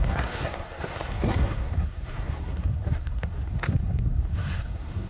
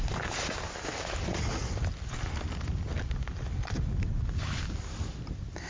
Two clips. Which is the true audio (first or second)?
second